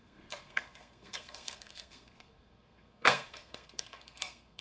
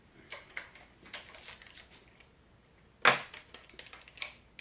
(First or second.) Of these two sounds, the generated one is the first